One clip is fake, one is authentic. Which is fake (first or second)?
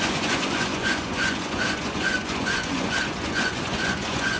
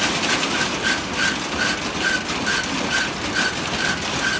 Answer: first